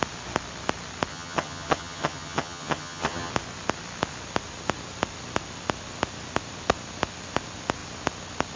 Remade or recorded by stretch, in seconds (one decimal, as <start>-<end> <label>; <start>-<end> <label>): 0.0-1.1 recorded; 1.1-3.3 remade; 3.3-8.6 recorded